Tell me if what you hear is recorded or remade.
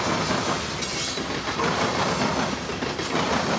recorded